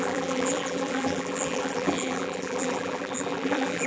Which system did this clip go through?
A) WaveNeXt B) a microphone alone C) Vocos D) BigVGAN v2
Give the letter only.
D